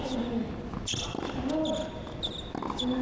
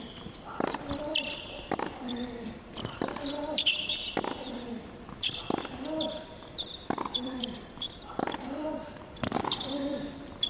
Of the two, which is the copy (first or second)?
second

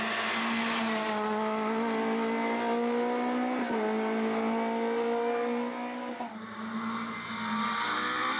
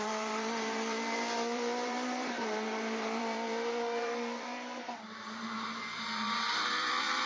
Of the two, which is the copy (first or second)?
second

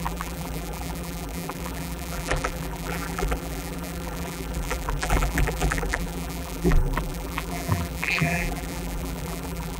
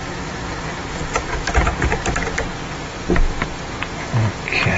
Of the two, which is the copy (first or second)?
first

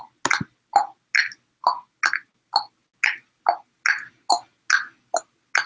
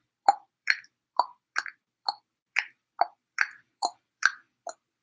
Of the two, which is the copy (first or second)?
second